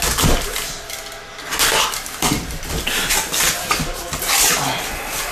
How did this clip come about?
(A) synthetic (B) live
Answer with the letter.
A